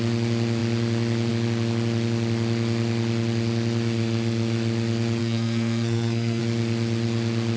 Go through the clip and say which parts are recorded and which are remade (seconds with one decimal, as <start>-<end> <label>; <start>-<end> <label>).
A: 0.0-5.2 recorded; 5.2-6.4 remade; 6.4-7.6 recorded